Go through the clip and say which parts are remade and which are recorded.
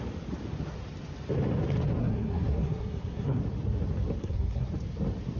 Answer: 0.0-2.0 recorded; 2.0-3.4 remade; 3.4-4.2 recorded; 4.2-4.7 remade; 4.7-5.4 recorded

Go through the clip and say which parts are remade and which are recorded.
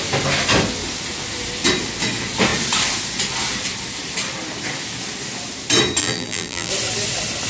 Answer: 0.0-6.0 recorded; 6.0-6.7 remade; 6.7-7.5 recorded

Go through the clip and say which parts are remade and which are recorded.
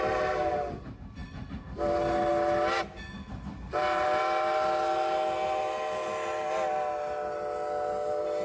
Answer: 0.0-8.4 recorded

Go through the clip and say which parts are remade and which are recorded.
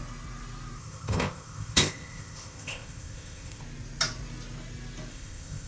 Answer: 0.0-0.8 recorded; 0.8-3.6 remade; 3.6-5.1 recorded; 5.1-5.7 remade